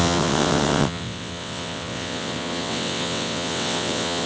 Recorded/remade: remade